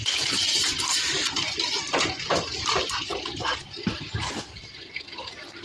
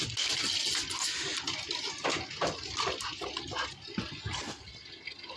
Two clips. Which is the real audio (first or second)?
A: second